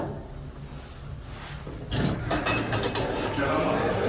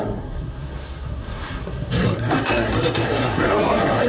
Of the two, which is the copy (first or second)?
second